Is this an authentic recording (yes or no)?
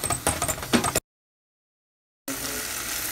yes